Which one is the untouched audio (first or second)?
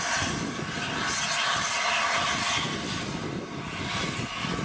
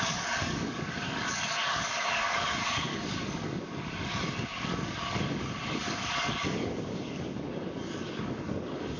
first